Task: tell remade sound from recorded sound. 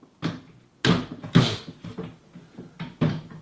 recorded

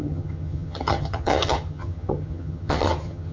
remade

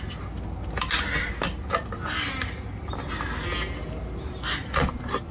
recorded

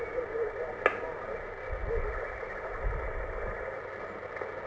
recorded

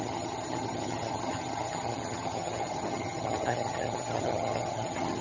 remade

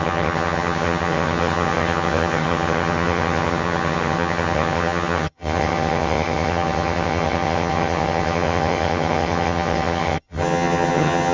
remade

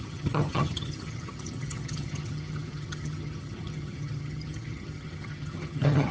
remade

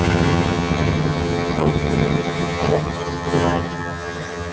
remade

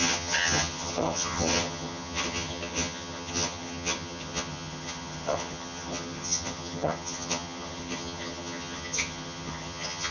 remade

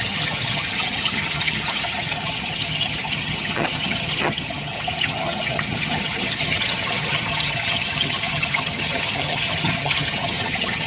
remade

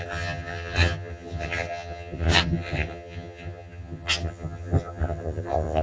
remade